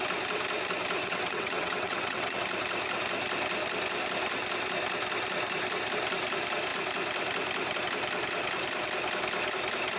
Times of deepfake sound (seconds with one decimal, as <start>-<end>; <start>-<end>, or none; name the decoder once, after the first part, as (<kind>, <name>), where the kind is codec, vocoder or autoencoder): 1.0-2.4 (vocoder, WaveNeXt)